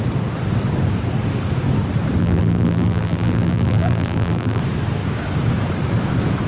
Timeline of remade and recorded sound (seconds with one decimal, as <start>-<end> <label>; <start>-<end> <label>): 0.0-2.2 recorded; 2.2-4.6 remade; 4.6-6.5 recorded